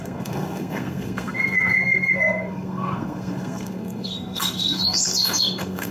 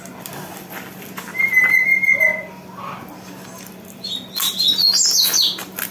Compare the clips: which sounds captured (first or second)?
second